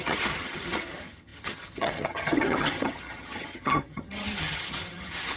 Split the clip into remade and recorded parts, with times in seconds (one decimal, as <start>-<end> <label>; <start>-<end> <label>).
0.0-5.4 remade